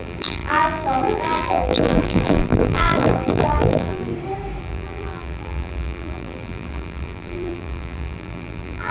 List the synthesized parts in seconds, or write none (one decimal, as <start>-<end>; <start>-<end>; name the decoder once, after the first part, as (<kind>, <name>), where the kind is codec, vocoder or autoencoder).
0.0-4.1 (vocoder, BigVGAN v2); 4.6-8.9